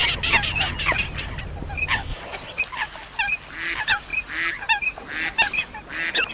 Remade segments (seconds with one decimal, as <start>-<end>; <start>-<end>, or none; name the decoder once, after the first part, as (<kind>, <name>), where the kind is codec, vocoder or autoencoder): 2.1-2.6 (vocoder, Vocos)